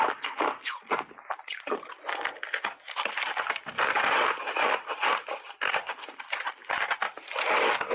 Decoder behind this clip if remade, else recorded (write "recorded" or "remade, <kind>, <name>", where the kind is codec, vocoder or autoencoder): recorded